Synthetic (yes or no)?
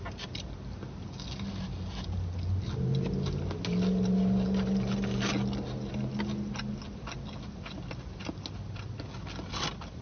no